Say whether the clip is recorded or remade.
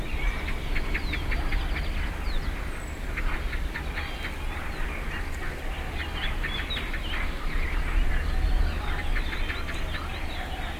recorded